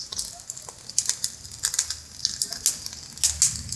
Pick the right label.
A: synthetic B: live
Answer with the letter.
B